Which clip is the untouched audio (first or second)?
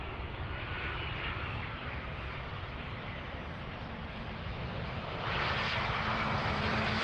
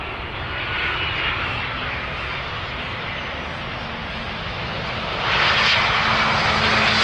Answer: second